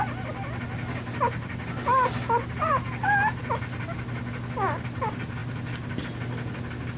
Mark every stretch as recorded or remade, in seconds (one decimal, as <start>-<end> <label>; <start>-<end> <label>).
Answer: 0.0-7.0 recorded